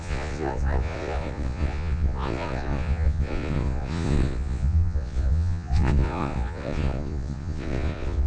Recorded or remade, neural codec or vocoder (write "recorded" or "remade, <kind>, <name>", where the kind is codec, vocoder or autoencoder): remade, vocoder, Vocos